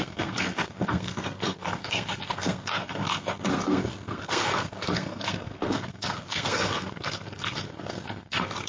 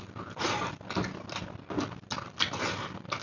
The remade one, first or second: first